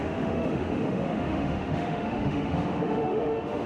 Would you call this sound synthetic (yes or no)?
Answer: yes